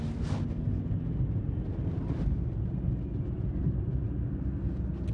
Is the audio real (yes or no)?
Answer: yes